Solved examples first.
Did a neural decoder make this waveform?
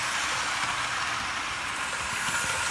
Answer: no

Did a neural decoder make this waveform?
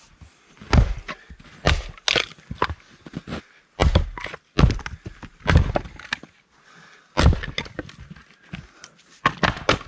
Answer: no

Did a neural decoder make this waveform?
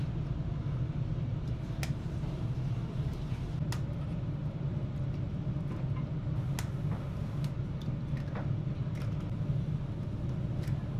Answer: no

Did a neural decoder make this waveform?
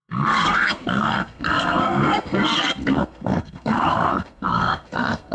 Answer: yes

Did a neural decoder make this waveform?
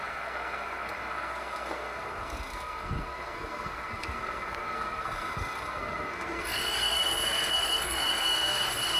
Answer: yes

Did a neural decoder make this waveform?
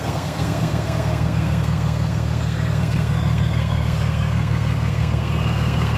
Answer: yes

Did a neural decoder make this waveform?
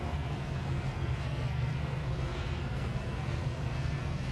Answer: yes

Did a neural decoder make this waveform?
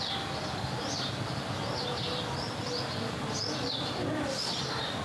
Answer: no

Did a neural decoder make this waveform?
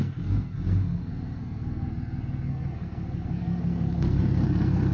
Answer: yes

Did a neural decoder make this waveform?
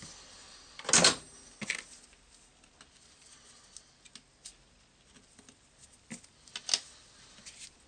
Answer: no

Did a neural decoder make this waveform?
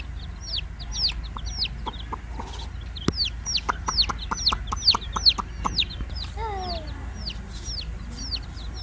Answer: no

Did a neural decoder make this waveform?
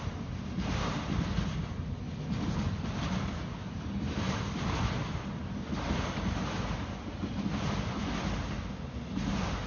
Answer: no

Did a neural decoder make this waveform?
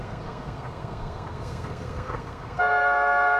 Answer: yes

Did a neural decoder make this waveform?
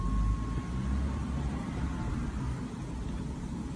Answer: no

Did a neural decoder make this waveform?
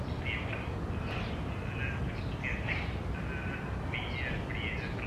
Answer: no